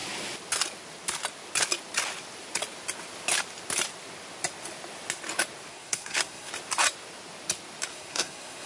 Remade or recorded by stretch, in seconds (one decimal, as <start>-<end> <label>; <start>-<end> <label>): 0.0-5.7 recorded; 5.7-6.5 remade; 6.5-7.9 recorded; 7.9-8.7 remade